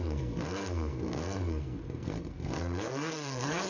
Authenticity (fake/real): fake